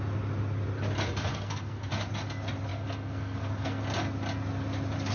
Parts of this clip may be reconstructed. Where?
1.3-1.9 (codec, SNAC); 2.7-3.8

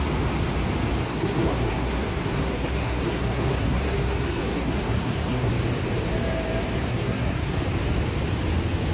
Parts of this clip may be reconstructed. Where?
1.1-5.5 (codec, SNAC); 6.8-7.6